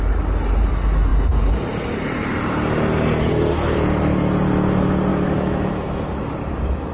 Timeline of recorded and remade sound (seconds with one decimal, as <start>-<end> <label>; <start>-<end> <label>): 0.0-5.1 recorded; 5.1-6.1 remade; 6.1-6.9 recorded